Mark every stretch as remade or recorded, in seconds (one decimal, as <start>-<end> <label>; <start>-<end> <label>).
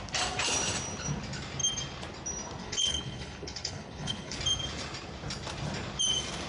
0.0-2.6 recorded; 2.6-4.4 remade; 4.4-6.5 recorded